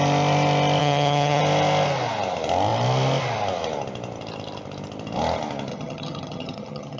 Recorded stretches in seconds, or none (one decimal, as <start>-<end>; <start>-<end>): 0.0-0.8; 1.4-5.7